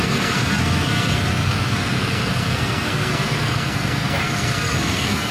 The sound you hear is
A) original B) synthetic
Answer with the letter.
B